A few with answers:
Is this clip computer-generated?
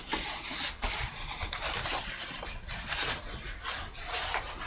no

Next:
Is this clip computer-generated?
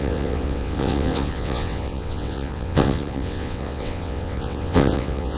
yes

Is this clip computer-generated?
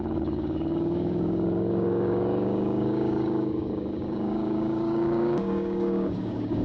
yes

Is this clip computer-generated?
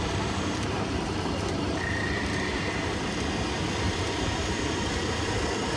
yes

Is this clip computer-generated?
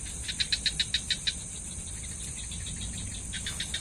no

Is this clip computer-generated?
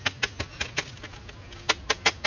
no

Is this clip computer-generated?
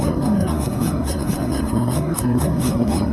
yes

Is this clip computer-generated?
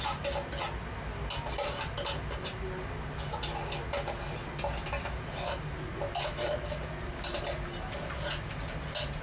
no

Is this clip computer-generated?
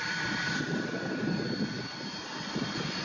yes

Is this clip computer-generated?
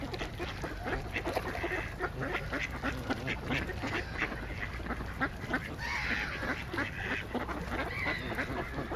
no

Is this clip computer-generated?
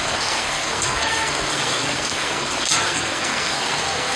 yes